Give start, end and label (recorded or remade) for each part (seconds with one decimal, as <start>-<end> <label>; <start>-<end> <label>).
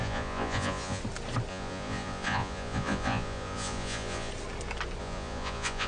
0.0-1.0 remade; 1.0-1.5 recorded; 1.5-4.3 remade; 4.3-5.0 recorded; 5.0-5.9 remade